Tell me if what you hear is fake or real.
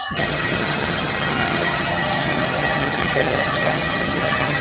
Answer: fake